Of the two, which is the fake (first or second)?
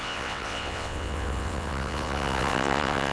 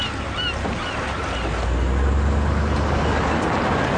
first